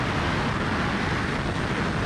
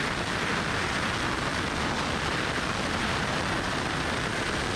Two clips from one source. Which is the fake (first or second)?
second